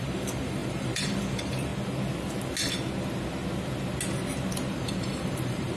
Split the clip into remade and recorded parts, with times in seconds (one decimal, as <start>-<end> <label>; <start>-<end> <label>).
0.0-1.7 remade; 1.7-4.5 recorded; 4.5-5.8 remade

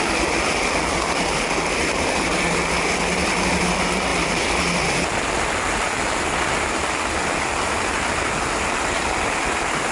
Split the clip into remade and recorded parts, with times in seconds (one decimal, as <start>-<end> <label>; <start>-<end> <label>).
0.0-9.9 recorded

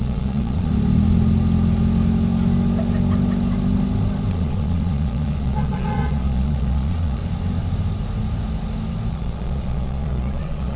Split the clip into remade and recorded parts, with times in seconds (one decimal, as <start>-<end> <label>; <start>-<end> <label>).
0.0-0.7 remade; 0.7-4.3 recorded; 4.3-7.2 remade; 7.2-9.1 recorded; 9.1-10.8 remade

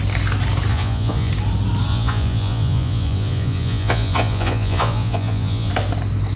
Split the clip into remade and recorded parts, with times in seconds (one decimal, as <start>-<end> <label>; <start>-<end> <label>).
0.0-0.7 recorded; 0.7-1.3 remade; 1.3-1.9 recorded; 1.9-5.7 remade; 5.7-6.4 recorded

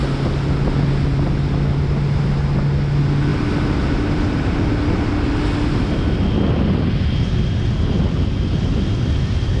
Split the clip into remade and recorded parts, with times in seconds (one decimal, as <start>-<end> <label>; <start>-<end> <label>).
0.0-9.6 recorded

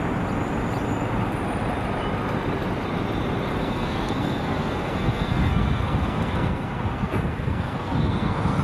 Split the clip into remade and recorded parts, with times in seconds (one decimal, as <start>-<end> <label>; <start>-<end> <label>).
0.0-3.5 recorded; 3.5-8.6 remade